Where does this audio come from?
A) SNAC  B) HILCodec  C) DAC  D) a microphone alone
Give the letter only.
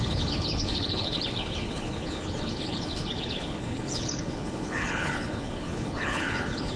B